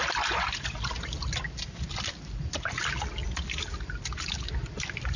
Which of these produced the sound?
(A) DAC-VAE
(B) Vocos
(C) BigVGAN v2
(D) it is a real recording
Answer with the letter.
D